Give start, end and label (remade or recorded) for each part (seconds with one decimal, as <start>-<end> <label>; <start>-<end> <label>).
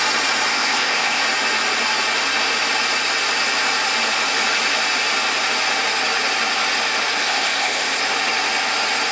0.0-0.5 recorded; 0.5-1.2 remade; 1.2-7.2 recorded; 7.2-8.0 remade; 8.0-9.1 recorded